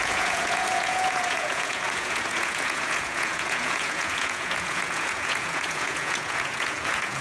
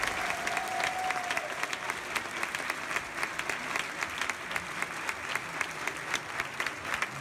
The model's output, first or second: first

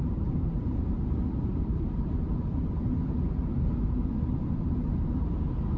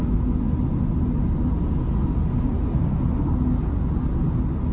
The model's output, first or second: first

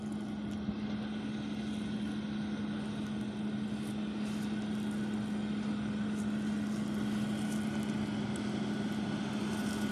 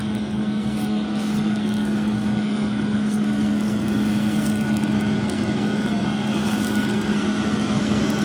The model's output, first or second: second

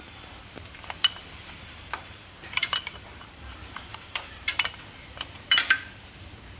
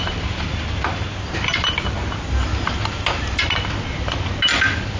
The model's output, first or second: first